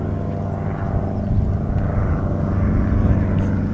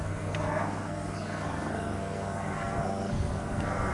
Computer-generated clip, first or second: second